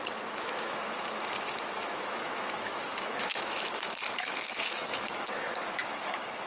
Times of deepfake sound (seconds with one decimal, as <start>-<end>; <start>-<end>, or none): 0.0-6.5